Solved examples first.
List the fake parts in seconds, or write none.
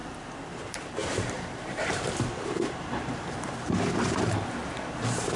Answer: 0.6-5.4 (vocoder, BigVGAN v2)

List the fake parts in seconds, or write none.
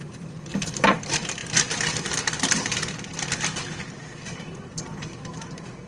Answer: 0.0-1.4 (vocoder, BigVGAN v2); 4.2-5.9